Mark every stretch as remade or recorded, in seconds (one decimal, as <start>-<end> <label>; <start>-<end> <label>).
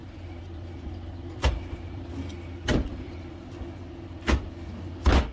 0.0-3.2 remade; 3.2-5.3 recorded